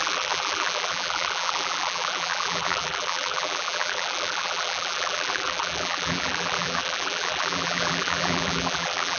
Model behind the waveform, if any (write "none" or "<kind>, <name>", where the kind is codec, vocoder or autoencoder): vocoder, BigVGAN v2